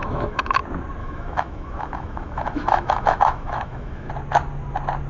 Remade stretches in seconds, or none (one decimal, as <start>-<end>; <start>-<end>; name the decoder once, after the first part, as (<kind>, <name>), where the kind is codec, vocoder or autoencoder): 0.0-0.6 (autoencoder, DAC-VAE); 1.0-4.1